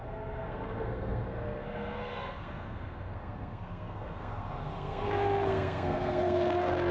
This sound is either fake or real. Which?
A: fake